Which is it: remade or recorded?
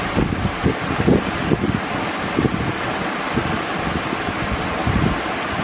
recorded